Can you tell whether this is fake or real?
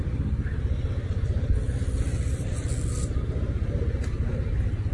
real